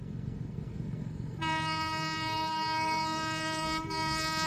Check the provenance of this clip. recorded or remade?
remade